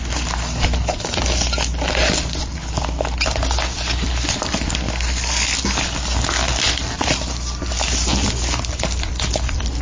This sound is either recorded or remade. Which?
remade